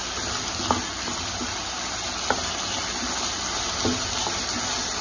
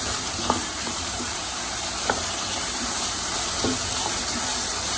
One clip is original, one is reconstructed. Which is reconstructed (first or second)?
second